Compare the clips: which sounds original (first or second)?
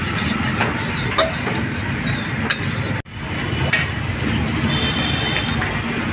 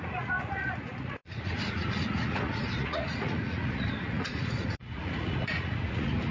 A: first